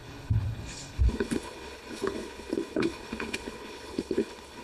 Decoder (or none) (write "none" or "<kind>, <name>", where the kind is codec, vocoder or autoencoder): codec, HILCodec